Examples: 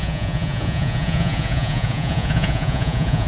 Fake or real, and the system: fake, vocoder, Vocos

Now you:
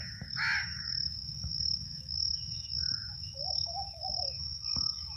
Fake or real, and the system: fake, autoencoder, DAC-VAE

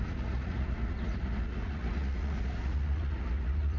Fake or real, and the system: fake, vocoder, Vocos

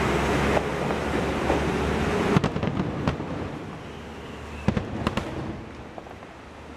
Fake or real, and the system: real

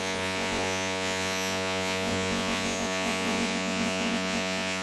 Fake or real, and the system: fake, vocoder, Vocos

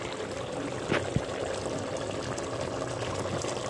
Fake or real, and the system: real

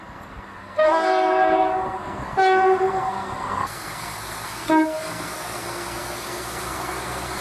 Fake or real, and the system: fake, codec, SNAC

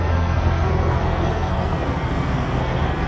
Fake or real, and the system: fake, codec, SNAC